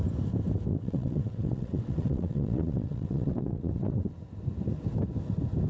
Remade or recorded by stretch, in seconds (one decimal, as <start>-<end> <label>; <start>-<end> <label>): 0.0-0.7 recorded; 0.7-4.1 remade; 4.1-5.7 recorded